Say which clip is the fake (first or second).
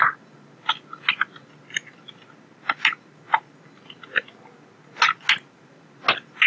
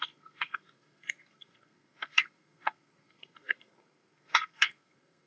second